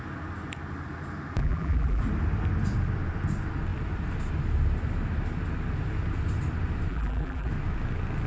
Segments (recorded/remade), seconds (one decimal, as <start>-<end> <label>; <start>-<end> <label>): 0.0-1.4 recorded; 1.4-2.0 remade; 2.0-6.9 recorded; 6.9-7.5 remade; 7.5-8.3 recorded